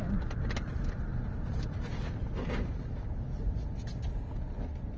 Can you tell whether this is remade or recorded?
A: recorded